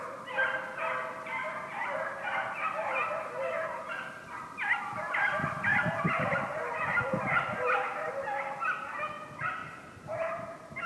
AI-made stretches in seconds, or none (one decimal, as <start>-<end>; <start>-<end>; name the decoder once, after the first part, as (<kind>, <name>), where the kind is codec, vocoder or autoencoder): 5.7-7.0 (vocoder, BigVGAN v2); 9.6-10.9